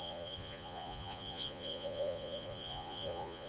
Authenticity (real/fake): fake